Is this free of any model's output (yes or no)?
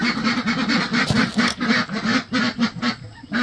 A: yes